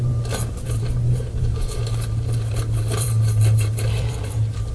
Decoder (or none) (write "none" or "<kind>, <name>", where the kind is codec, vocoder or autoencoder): vocoder, BigVGAN v2